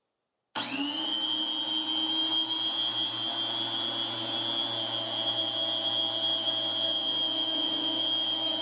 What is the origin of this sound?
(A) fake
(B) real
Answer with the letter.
B